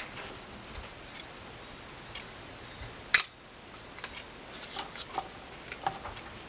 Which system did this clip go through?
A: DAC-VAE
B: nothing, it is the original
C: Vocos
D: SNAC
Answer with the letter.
B